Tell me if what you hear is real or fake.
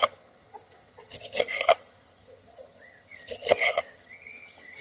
fake